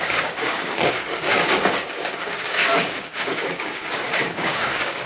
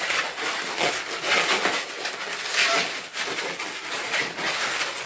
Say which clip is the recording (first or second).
second